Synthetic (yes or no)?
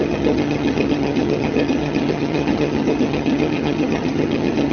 yes